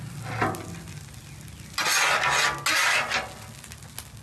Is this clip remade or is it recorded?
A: recorded